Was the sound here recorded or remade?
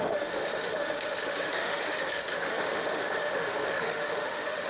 remade